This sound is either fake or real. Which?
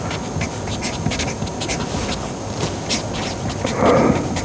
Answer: real